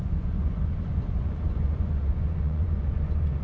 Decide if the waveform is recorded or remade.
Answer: remade